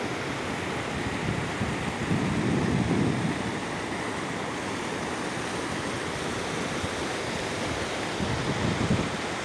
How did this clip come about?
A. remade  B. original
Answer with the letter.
B